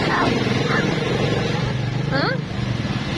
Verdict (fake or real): fake